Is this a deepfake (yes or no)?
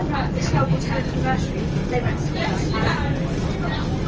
no